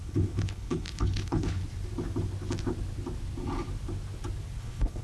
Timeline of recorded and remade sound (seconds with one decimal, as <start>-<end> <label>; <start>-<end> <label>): 0.0-1.6 remade; 1.6-4.6 recorded; 4.6-5.0 remade